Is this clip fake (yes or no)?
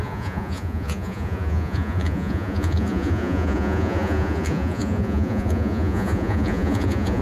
yes